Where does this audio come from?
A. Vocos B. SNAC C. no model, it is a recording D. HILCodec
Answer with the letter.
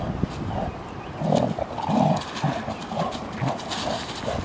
C